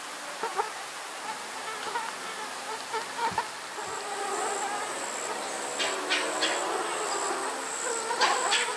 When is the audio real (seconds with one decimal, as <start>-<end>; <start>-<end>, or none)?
0.0-8.8